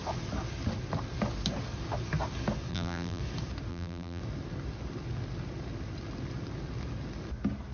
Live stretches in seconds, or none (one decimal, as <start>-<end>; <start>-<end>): 0.0-2.7; 3.2-3.7; 4.2-7.7